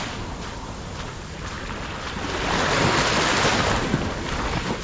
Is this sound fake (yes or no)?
no